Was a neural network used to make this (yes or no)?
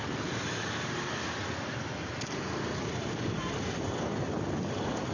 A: no